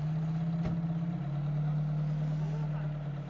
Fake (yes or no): no